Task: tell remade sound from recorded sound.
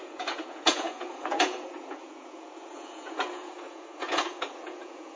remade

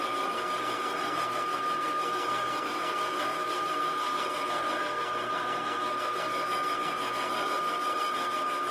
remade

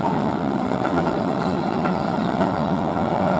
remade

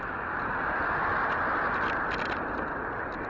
recorded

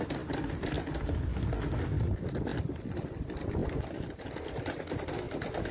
recorded